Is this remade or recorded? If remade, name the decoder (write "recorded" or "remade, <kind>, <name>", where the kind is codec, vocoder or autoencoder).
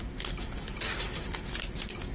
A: recorded